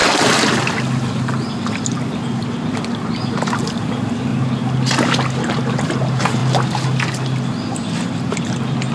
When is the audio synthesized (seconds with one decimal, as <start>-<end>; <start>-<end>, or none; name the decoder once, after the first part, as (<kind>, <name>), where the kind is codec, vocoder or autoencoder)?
none